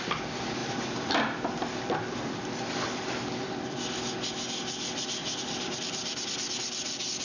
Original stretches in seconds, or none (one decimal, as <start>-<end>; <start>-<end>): 0.0-0.6; 4.0-5.2; 6.5-7.2

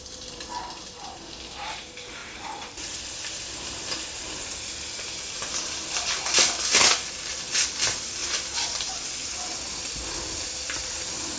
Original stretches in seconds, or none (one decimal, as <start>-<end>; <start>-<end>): 0.0-2.2; 3.0-8.2; 8.9-11.4

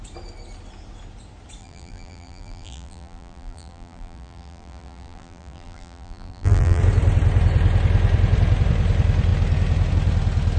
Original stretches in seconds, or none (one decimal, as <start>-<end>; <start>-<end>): 0.0-1.6; 6.8-10.6

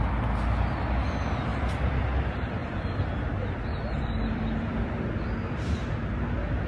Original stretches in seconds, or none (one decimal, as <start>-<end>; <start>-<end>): 0.0-1.5; 2.0-2.6; 3.1-3.7; 5.9-6.7

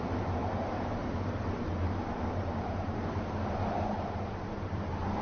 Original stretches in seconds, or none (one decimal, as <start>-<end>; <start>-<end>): 0.0-0.4; 3.2-5.2

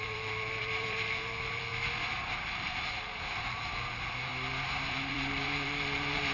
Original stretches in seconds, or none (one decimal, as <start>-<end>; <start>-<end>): 1.7-2.2; 4.3-4.9

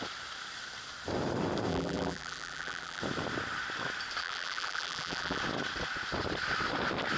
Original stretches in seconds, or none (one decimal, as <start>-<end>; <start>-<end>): 0.0-1.7; 3.0-4.2; 5.4-7.2